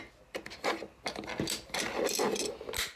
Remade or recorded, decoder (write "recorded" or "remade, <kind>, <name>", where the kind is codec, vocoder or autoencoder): recorded